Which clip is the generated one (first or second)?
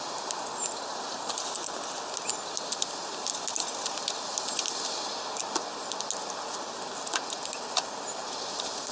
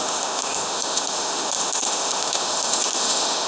second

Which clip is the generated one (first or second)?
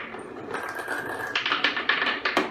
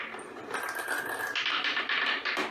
first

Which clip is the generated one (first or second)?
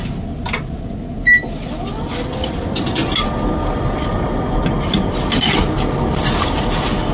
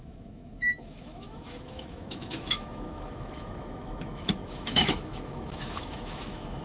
second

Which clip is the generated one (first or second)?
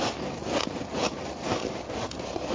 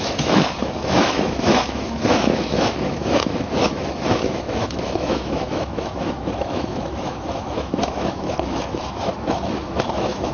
second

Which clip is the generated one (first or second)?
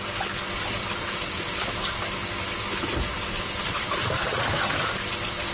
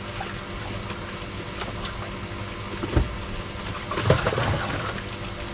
first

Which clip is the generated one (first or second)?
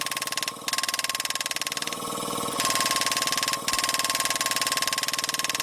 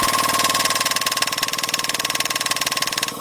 second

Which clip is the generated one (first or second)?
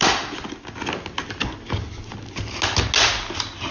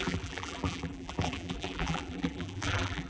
second